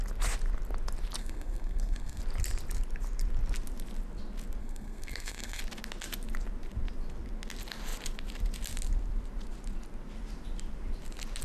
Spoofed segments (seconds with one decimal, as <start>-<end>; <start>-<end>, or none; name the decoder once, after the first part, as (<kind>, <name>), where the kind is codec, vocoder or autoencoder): 1.2-2.2 (codec, SNAC); 4.6-5.6